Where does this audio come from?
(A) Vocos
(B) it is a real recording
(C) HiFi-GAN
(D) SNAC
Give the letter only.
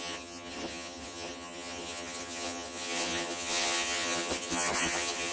C